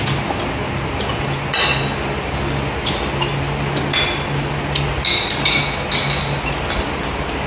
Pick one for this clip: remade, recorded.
recorded